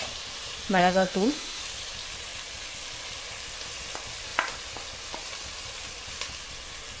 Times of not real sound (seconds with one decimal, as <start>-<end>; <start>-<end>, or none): 0.8-1.6